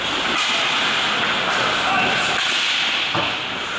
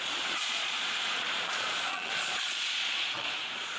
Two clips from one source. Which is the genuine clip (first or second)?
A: first